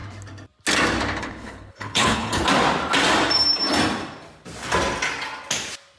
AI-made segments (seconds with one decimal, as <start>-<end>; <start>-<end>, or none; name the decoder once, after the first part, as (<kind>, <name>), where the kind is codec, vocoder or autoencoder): 1.2-2.4 (codec, HILCodec)